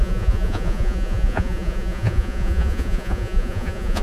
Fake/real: fake